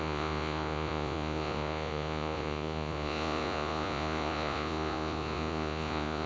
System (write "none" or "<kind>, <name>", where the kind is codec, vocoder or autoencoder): vocoder, Vocos